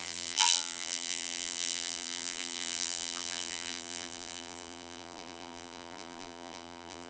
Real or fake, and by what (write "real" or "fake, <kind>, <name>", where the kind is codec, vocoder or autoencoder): fake, vocoder, BigVGAN v2